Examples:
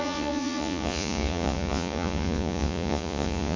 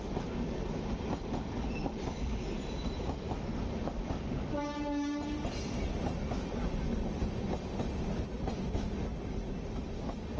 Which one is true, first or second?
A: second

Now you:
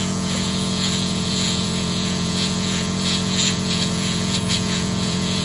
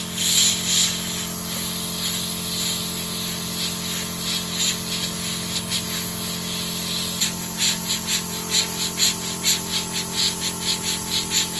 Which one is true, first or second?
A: second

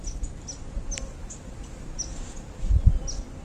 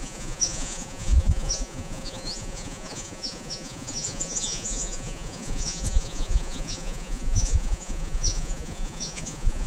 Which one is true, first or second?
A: first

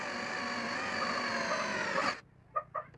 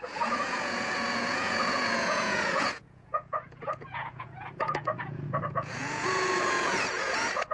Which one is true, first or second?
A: first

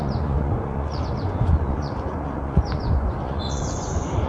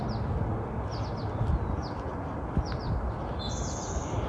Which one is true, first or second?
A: second